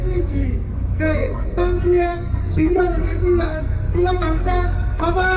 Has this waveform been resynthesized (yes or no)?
yes